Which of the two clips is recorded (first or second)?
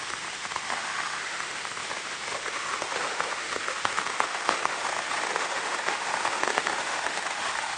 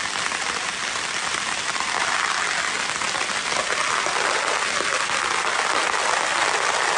second